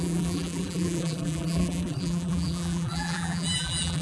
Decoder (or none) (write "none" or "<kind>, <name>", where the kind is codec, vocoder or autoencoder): vocoder, BigVGAN v2